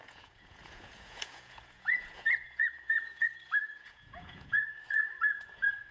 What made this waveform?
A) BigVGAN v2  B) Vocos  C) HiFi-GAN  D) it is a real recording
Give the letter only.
B